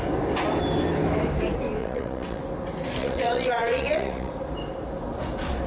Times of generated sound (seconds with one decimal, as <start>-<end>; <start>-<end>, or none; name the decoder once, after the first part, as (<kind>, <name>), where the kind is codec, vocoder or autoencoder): 1.8-2.4 (vocoder, WaveNeXt); 3.0-4.3